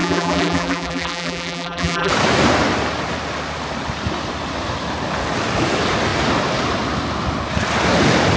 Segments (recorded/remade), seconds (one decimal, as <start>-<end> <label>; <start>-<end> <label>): 0.0-2.1 remade; 2.1-8.4 recorded